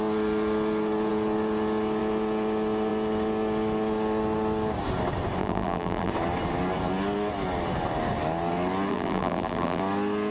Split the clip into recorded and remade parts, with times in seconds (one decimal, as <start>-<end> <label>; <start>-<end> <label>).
0.0-5.4 recorded; 5.4-6.1 remade; 6.1-8.9 recorded; 8.9-9.8 remade; 9.8-10.3 recorded